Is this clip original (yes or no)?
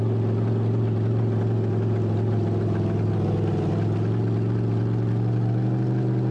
yes